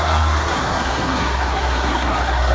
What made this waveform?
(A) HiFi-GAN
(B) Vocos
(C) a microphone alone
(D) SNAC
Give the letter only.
D